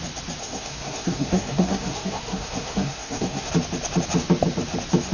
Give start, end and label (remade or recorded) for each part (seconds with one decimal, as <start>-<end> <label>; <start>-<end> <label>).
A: 0.0-0.4 recorded; 0.4-3.5 remade; 3.5-5.1 recorded